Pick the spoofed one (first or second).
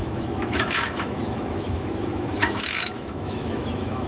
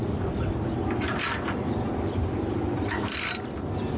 first